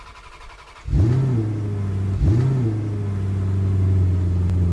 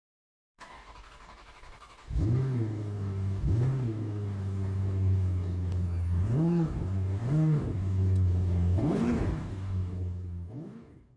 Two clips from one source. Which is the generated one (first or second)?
second